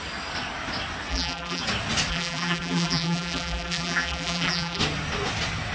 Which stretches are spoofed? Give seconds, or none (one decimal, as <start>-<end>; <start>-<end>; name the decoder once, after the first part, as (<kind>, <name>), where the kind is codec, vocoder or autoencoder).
1.1-1.6 (vocoder, BigVGAN v2); 2.1-4.8